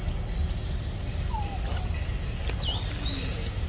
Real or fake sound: real